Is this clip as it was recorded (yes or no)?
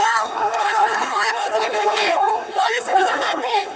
no